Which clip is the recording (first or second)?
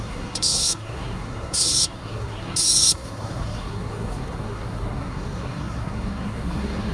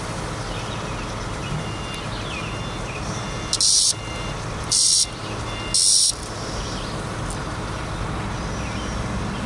second